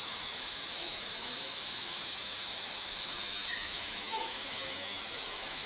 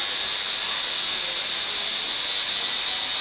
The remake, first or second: first